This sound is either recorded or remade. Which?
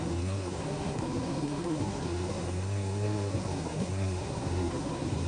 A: remade